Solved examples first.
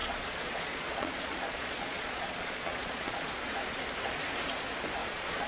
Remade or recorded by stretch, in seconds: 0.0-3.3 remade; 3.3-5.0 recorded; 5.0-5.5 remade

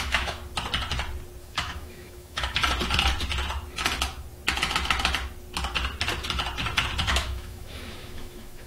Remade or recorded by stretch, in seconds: 0.0-0.4 remade; 0.4-1.4 recorded; 1.4-2.6 remade; 2.6-7.1 recorded; 7.1-8.7 remade

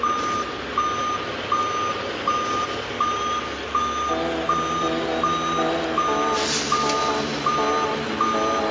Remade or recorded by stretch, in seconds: 0.0-8.7 recorded